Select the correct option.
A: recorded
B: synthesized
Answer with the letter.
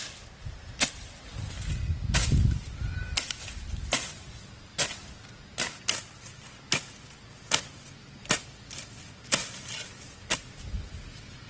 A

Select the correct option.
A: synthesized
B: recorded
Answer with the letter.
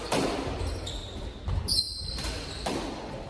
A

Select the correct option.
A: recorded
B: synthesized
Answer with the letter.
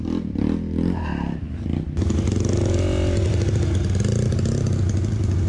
A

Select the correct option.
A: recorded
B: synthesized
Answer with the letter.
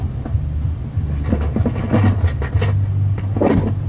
A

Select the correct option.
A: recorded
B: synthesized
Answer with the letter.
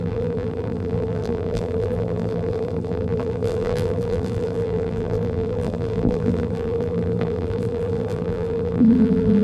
B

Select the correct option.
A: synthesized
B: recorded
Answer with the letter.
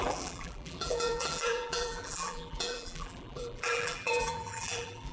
A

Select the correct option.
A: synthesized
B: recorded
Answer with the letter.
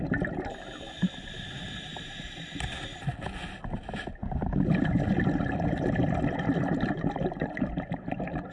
B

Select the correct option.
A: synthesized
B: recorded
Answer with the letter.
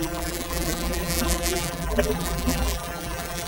A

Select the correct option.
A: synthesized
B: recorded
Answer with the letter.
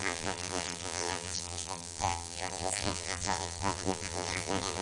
A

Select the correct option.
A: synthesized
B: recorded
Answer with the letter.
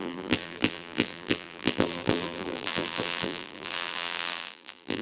A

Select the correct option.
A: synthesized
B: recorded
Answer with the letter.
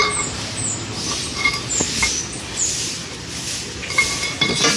B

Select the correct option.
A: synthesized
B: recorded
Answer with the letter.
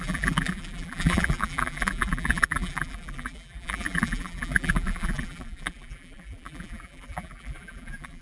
A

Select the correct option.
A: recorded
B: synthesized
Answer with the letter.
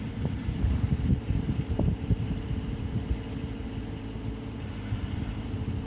B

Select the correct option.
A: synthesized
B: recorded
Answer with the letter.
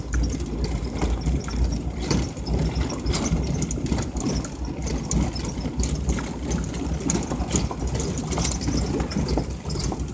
B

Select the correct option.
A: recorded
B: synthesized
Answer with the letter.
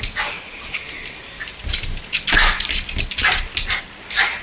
A